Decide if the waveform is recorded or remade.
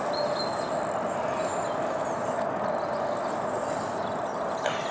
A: recorded